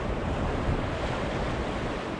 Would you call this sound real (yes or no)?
yes